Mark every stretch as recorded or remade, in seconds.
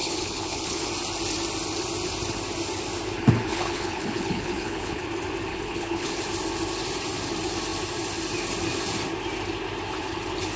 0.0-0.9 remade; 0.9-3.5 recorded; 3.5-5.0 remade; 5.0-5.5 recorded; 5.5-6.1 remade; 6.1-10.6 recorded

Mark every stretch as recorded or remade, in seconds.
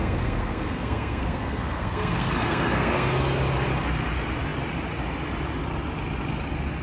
0.0-3.2 remade; 3.2-6.8 recorded